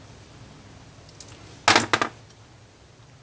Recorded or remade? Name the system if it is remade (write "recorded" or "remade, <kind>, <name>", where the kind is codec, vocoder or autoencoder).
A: recorded